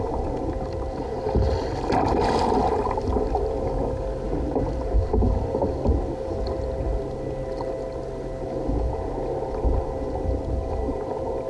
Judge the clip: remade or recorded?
recorded